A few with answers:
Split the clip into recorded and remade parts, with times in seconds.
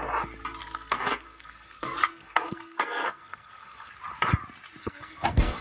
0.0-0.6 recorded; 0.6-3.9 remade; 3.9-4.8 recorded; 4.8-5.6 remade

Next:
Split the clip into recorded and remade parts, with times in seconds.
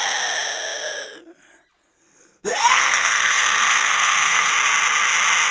0.0-2.0 recorded; 2.0-4.5 remade; 4.5-5.5 recorded